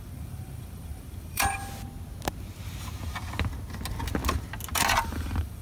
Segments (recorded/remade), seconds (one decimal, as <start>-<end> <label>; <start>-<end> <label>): 0.0-1.6 remade; 1.6-5.0 recorded; 5.0-5.6 remade